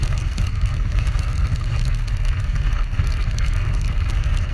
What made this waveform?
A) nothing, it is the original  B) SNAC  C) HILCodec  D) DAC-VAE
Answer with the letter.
B